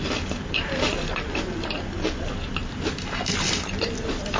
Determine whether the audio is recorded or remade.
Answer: remade